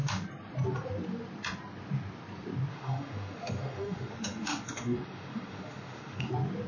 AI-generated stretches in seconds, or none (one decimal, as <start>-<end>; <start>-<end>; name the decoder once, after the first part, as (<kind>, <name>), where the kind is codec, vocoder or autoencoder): 2.7-6.3 (autoencoder, DAC-VAE)